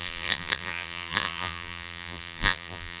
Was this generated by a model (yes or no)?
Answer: yes